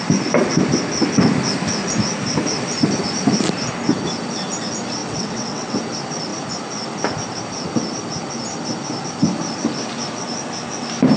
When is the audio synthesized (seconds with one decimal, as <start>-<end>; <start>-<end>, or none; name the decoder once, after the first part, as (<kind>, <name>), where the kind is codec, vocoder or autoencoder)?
5.0-5.8 (vocoder, WaveNeXt)